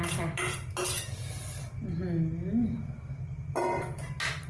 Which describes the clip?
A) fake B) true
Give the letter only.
B